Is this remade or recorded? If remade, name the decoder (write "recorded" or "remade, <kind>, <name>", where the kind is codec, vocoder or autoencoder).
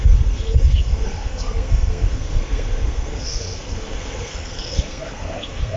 remade, codec, SNAC